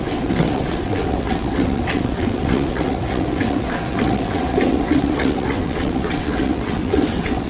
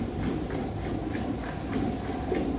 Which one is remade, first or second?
first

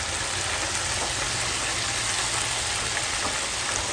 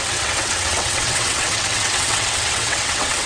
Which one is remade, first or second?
second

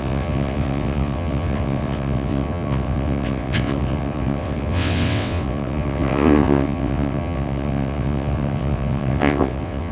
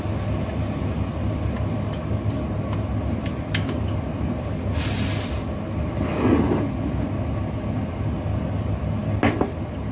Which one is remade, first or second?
first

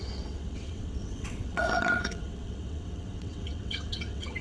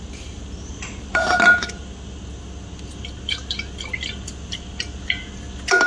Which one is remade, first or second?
first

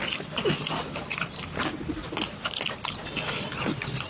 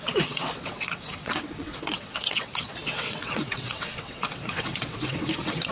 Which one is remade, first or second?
second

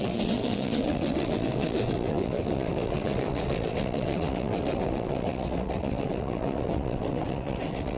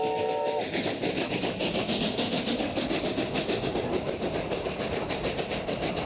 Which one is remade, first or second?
first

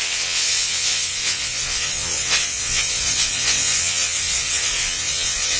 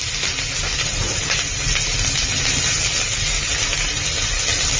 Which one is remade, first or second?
first